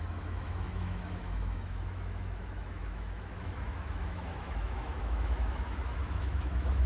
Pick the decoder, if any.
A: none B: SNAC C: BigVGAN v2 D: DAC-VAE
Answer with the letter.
D